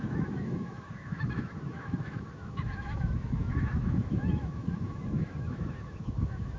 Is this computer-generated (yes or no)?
yes